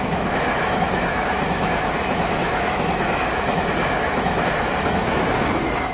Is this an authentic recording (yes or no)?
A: no